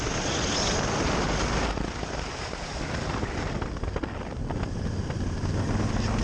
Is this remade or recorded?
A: remade